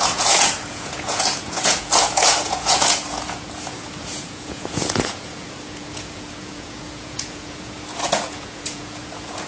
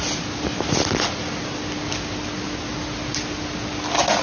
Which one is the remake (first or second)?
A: first